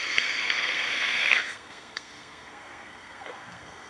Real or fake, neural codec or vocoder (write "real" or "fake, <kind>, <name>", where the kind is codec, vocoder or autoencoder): fake, codec, SNAC